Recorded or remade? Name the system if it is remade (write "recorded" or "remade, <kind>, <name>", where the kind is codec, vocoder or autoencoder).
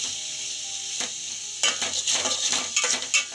recorded